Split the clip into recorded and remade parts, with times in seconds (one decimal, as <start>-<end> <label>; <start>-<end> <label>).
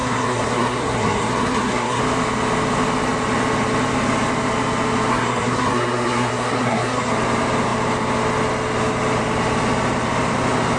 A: 0.0-2.0 remade; 2.0-5.1 recorded; 5.1-7.1 remade; 7.1-10.8 recorded